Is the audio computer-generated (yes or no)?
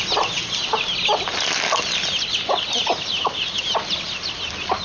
no